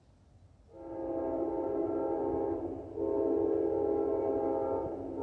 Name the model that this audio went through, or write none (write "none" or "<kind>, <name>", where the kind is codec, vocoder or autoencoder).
none